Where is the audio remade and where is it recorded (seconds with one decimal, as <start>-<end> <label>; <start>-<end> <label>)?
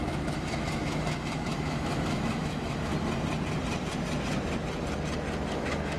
0.0-2.9 remade; 2.9-5.5 recorded; 5.5-6.0 remade